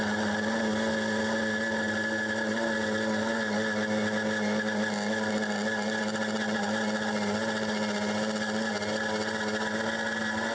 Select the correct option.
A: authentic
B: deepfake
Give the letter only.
A